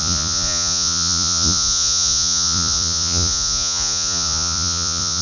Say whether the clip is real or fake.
fake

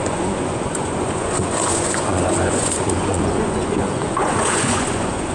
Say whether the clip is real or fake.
fake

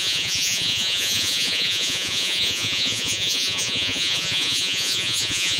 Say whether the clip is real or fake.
fake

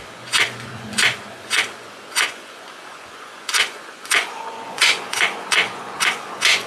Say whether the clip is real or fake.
fake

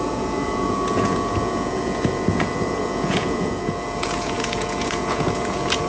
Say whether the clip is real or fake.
fake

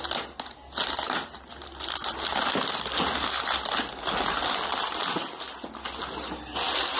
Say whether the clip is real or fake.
real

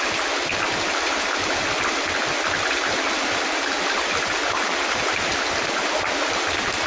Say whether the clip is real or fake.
real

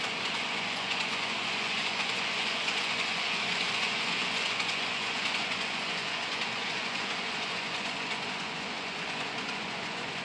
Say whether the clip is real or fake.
fake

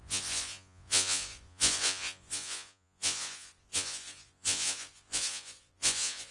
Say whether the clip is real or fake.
fake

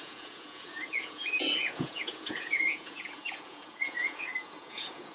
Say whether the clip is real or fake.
fake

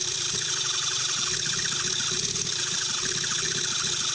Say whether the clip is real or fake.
real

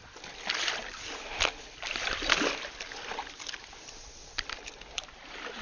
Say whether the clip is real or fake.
real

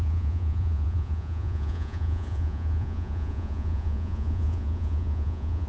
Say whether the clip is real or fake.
fake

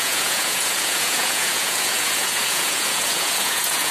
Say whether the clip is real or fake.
fake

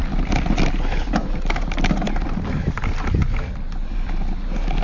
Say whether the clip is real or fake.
real